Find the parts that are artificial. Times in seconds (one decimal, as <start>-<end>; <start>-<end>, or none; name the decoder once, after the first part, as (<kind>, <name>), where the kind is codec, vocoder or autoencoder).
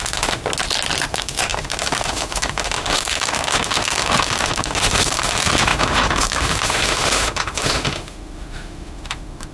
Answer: 0.0-0.4 (autoencoder, DAC-VAE); 1.1-9.5